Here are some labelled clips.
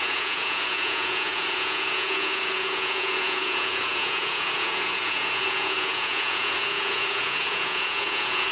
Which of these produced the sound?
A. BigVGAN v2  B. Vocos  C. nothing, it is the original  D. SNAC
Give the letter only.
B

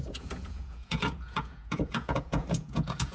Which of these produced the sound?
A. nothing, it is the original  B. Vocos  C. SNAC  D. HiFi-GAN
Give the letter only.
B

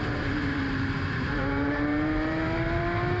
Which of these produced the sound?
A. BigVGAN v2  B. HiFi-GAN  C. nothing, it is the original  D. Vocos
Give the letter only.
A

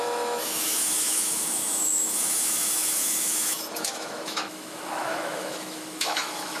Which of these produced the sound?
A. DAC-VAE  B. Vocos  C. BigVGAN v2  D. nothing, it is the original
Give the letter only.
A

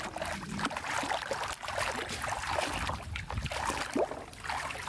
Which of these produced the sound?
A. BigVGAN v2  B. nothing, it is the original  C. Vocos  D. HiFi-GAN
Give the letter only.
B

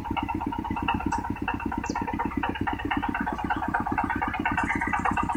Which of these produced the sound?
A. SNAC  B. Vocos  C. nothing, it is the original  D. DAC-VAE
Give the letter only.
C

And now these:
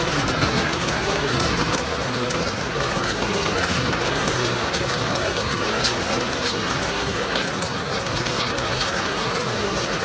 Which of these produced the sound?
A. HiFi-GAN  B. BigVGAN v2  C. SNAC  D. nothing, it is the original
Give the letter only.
C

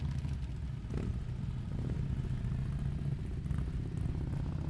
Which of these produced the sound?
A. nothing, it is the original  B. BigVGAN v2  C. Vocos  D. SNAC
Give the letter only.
A